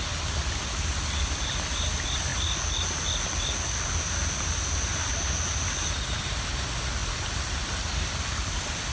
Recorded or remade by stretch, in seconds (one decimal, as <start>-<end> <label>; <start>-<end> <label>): 0.0-8.9 recorded